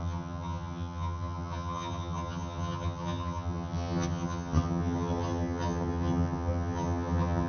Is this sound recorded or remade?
remade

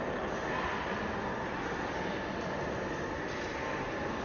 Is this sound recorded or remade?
recorded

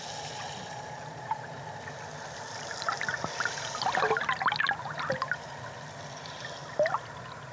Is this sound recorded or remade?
recorded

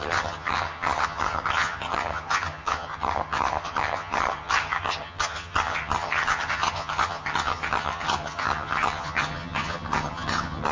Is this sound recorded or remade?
remade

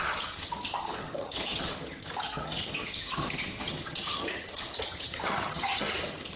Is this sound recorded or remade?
remade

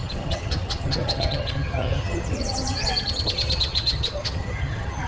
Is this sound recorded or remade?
remade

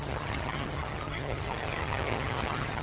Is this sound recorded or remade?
remade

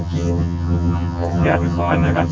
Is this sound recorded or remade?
remade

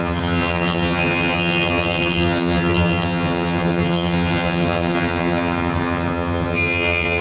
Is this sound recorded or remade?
remade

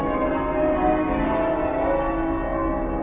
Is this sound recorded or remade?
recorded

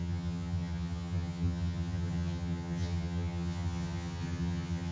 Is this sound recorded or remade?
remade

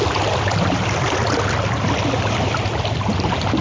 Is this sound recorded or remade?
recorded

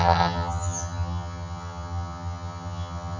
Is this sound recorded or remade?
remade